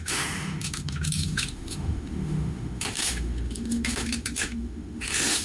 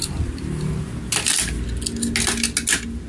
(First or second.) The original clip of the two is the second